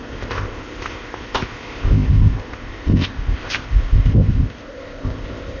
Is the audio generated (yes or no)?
yes